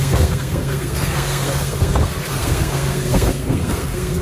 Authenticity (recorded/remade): remade